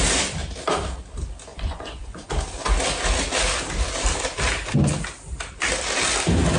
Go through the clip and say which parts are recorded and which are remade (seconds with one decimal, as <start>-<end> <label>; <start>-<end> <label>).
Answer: 0.0-1.5 recorded; 1.5-2.3 remade; 2.3-6.6 recorded